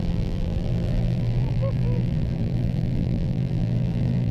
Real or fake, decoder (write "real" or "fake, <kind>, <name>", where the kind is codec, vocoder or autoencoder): fake, vocoder, BigVGAN v2